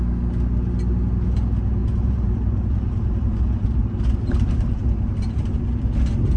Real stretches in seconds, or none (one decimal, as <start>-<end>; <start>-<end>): 0.0-1.8; 5.6-6.4